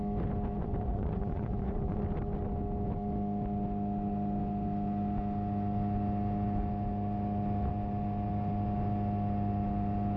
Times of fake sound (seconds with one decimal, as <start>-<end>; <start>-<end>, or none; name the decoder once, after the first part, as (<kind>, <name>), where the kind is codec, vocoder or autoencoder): 0.6-2.0 (vocoder, Vocos)